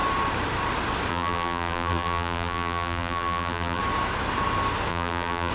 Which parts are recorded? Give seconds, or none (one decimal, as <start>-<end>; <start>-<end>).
0.0-1.1; 3.8-4.9